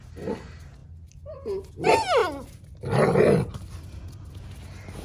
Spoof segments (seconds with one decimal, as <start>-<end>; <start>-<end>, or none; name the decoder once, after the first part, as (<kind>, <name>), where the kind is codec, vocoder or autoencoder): none